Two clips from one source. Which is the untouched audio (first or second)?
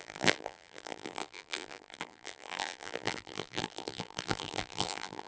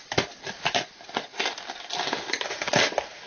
second